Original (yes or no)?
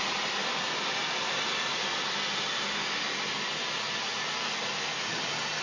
yes